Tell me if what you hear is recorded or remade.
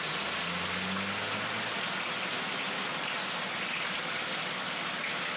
recorded